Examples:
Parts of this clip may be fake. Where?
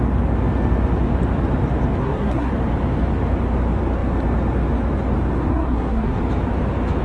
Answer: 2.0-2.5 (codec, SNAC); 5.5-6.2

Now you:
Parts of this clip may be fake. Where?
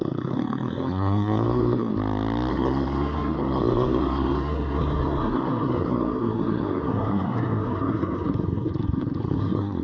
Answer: 0.0-1.9 (codec, SNAC); 2.5-9.8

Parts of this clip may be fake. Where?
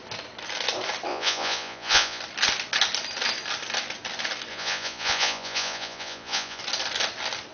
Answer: 1.1-2.2 (vocoder, Vocos); 4.5-6.6